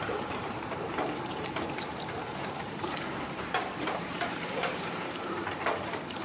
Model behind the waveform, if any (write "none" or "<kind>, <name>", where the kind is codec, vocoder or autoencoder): vocoder, BigVGAN v2